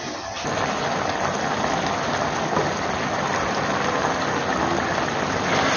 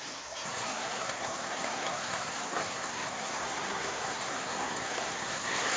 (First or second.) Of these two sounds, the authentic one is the first